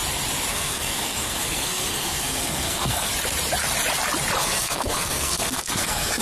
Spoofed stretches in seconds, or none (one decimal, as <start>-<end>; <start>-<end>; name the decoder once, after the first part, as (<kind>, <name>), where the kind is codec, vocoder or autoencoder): 0.5-3.1 (codec, SNAC); 4.4-6.2